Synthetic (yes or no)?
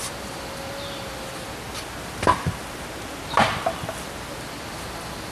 no